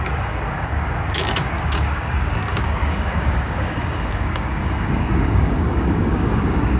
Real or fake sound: fake